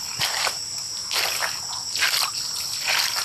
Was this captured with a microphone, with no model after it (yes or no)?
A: yes